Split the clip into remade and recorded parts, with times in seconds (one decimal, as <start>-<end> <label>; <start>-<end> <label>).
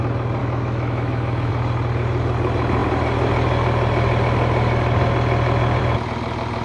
0.0-0.4 recorded; 0.4-1.5 remade; 1.5-6.6 recorded